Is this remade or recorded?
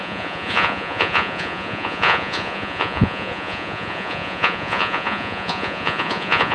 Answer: remade